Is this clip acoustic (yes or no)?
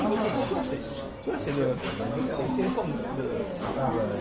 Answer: yes